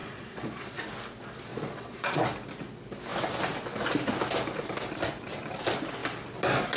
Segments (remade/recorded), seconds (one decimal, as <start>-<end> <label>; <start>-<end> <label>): 0.0-0.8 remade; 0.8-1.5 recorded; 1.5-2.2 remade; 2.2-6.8 recorded